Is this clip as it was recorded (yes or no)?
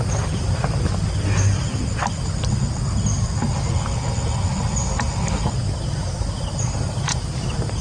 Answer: yes